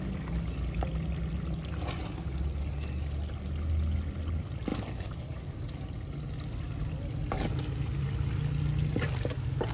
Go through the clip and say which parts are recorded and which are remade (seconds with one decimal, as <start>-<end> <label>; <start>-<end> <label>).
0.0-9.7 recorded